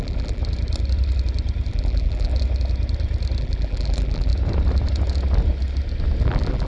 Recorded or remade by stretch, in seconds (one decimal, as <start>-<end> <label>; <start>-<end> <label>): 0.0-0.4 remade; 0.4-1.7 recorded; 1.7-2.3 remade; 2.3-3.4 recorded; 3.4-4.3 remade; 4.3-6.2 recorded; 6.2-6.7 remade

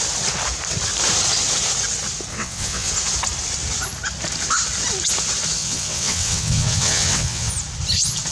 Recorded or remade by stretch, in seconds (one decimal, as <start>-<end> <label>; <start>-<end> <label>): 0.0-2.3 recorded; 2.3-2.9 remade; 2.9-5.6 recorded; 5.6-7.5 remade; 7.5-8.3 recorded

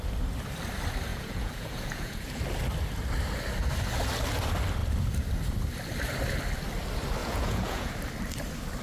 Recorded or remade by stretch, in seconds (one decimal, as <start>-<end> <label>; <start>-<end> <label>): 0.0-1.1 recorded; 1.1-2.4 remade; 2.4-7.2 recorded; 7.2-7.9 remade; 7.9-8.8 recorded

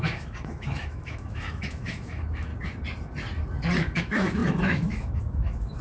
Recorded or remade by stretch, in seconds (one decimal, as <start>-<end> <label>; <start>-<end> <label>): 0.0-2.5 remade; 2.5-3.8 recorded; 3.8-5.8 remade

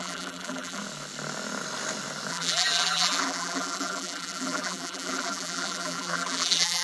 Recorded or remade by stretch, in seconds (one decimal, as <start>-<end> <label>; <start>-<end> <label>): 0.0-0.8 remade; 0.8-2.3 recorded; 2.3-6.8 remade

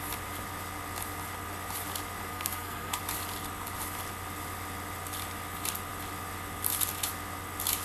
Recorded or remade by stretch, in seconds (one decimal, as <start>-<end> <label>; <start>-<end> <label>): 0.0-2.3 recorded; 2.3-3.0 remade; 3.0-7.8 recorded

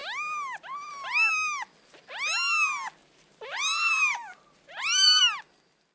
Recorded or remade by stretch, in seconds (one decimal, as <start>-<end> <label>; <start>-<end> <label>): 0.0-3.0 recorded; 3.0-5.2 remade; 5.2-5.9 recorded

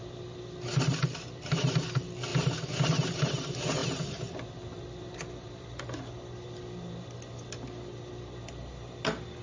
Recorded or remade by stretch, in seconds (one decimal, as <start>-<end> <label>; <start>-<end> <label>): 0.0-9.4 recorded